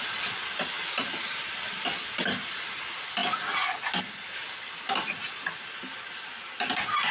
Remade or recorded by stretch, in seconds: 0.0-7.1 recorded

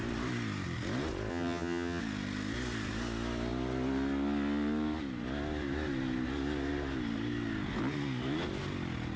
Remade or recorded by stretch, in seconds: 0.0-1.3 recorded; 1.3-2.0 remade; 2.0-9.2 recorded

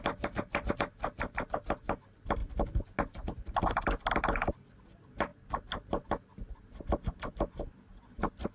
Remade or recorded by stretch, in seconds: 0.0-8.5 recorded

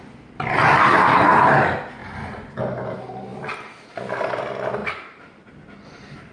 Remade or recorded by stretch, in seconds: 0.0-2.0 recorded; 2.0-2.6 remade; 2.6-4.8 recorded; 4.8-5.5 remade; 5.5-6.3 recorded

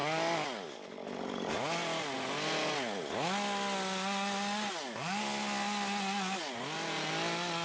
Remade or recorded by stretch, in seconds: 0.0-7.6 recorded

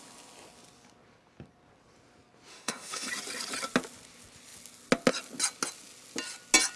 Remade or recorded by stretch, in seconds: 0.0-2.5 recorded; 2.5-3.1 remade; 3.1-6.8 recorded

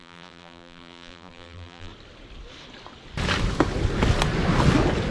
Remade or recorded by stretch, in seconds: 0.0-1.9 remade; 1.9-5.1 recorded